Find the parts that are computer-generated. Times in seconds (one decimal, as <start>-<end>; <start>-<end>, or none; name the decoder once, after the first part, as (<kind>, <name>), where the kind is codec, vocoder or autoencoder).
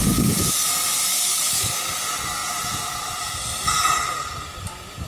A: 0.0-0.6 (codec, DAC); 1.1-1.9